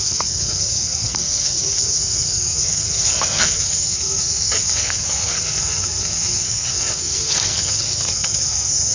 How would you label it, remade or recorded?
remade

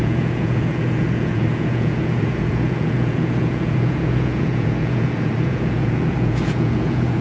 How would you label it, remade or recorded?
remade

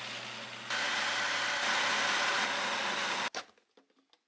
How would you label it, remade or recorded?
recorded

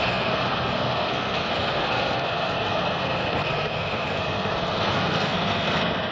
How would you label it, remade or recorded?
remade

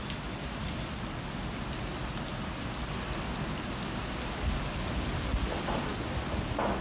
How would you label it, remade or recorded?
recorded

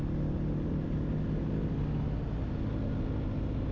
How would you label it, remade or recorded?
recorded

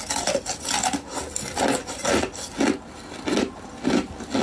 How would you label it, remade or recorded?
recorded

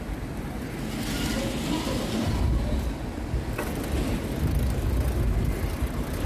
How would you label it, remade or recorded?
recorded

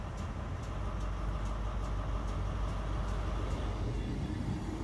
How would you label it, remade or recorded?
recorded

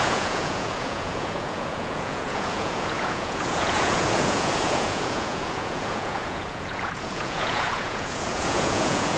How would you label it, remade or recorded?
remade